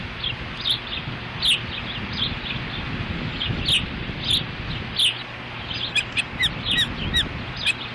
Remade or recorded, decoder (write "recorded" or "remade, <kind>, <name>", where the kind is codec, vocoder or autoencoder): recorded